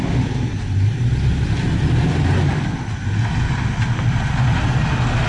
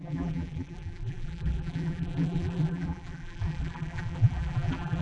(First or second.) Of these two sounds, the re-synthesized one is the second